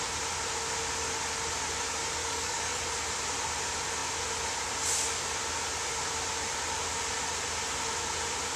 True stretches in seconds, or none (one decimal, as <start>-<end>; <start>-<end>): 0.0-2.2; 2.8-8.6